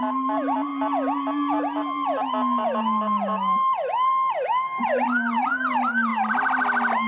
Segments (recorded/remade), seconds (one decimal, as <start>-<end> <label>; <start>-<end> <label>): 0.0-0.7 remade; 0.7-4.8 recorded; 4.8-6.1 remade; 6.1-7.1 recorded